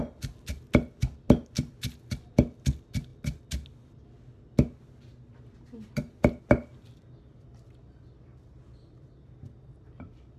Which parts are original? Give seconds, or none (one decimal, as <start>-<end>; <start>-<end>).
0.0-10.4